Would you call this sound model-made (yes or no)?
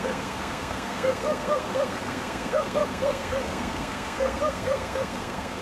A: yes